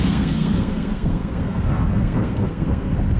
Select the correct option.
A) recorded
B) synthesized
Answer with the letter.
B